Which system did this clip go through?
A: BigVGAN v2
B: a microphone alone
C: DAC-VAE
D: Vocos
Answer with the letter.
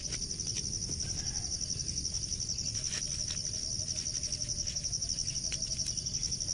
B